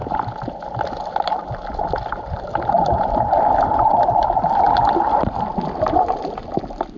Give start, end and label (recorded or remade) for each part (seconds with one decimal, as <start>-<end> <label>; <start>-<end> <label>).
0.0-7.0 remade